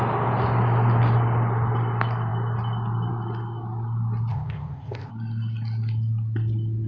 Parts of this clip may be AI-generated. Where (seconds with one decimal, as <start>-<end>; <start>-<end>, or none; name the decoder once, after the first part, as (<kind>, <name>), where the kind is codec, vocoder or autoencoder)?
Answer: 4.3-5.1 (codec, ZipCodec)